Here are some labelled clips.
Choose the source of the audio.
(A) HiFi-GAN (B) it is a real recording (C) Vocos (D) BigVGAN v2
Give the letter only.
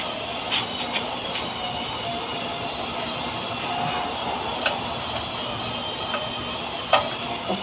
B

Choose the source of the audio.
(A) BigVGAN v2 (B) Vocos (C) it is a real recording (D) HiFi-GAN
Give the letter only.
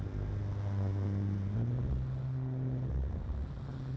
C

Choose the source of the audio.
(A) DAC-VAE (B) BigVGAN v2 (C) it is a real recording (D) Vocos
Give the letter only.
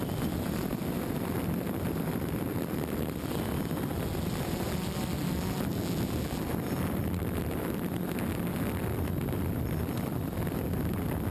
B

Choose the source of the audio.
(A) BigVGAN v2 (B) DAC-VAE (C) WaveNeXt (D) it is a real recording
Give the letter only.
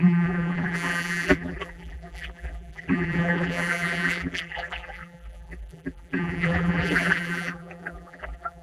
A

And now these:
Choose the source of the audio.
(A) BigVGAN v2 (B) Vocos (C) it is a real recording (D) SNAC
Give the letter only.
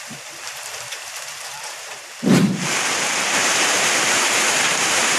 A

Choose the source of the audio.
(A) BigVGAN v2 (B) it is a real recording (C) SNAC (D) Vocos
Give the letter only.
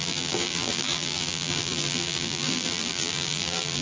A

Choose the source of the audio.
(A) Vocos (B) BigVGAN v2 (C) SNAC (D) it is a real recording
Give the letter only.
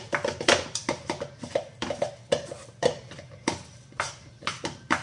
B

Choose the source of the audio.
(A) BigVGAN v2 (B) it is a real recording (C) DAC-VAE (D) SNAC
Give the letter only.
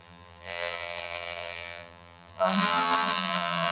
A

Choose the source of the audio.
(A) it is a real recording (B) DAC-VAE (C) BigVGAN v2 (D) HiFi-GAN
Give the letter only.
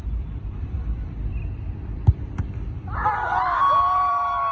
C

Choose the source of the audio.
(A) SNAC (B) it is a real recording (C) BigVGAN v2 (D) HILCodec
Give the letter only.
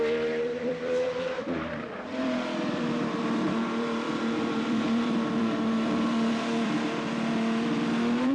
C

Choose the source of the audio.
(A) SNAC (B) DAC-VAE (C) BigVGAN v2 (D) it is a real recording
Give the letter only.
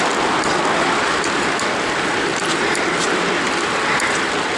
C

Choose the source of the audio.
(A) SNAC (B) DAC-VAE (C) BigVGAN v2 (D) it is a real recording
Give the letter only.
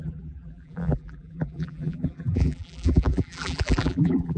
C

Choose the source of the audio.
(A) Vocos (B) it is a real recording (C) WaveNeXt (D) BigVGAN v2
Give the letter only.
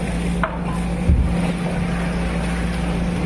B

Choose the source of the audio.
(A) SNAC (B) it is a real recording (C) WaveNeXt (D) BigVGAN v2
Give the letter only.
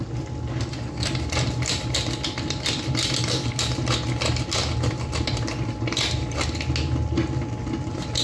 B